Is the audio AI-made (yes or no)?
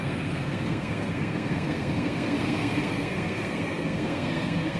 yes